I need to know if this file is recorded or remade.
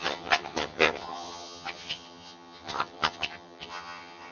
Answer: remade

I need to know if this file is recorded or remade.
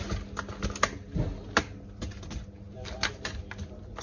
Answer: recorded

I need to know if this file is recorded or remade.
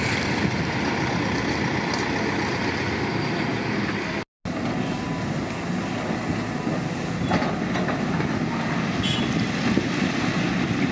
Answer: recorded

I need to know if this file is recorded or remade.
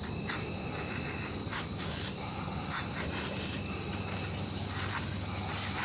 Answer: recorded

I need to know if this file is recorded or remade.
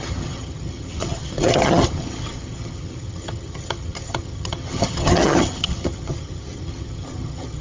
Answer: remade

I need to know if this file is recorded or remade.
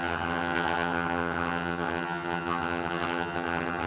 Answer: remade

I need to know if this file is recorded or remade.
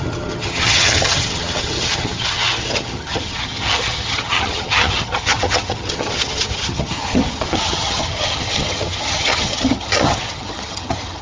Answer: remade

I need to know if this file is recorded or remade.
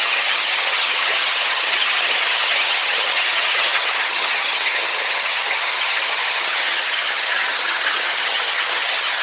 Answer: remade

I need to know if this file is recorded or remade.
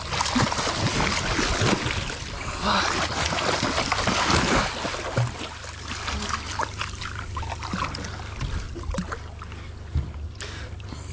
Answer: recorded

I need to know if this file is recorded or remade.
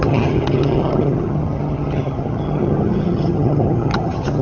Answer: remade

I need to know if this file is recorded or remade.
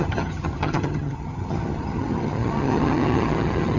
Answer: remade